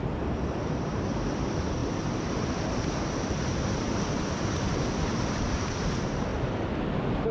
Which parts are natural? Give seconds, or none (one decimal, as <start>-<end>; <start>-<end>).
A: 1.8-3.8; 6.3-7.3